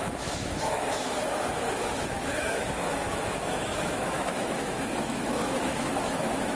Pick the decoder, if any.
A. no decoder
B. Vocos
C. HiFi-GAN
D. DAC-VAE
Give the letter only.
D